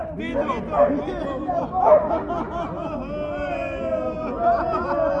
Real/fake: real